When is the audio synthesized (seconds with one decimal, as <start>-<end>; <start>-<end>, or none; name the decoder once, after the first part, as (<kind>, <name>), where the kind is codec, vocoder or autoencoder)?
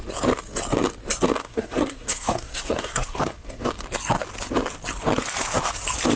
1.4-3.7 (codec, SNAC)